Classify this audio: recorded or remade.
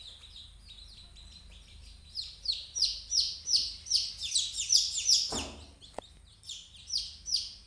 recorded